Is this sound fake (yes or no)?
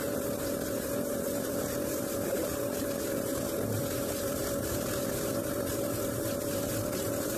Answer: yes